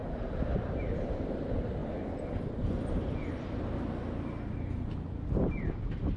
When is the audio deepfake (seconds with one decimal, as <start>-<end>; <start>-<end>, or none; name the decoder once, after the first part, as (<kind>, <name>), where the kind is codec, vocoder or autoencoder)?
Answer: 0.0-1.8 (vocoder, BigVGAN v2); 5.5-6.2